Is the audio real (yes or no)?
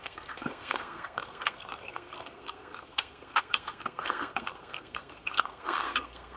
no